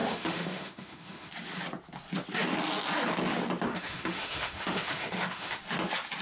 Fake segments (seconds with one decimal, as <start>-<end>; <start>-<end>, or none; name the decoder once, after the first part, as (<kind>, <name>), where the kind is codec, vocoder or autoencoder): 0.0-1.3 (autoencoder, DAC-VAE); 3.7-5.6